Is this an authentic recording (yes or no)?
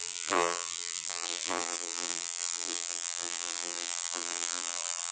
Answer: no